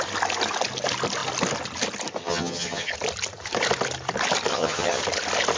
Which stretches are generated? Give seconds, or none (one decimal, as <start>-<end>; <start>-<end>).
2.2-2.9; 4.5-5.0